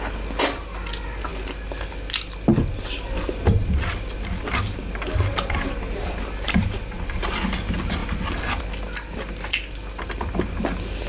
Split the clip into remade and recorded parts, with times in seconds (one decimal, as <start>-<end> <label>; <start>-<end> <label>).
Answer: 0.0-11.1 recorded